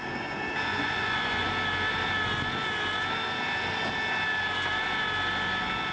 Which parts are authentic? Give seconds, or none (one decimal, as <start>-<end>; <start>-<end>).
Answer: 0.0-0.7; 1.5-5.9